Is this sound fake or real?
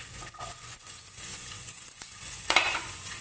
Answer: fake